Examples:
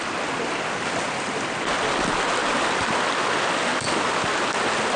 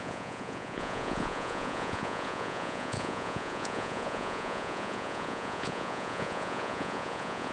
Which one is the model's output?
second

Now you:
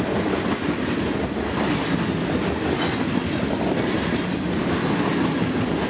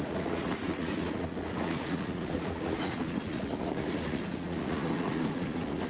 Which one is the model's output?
second